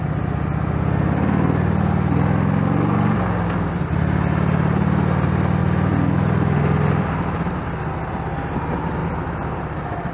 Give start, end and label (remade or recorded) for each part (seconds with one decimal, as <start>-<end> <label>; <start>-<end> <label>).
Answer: 0.0-10.1 recorded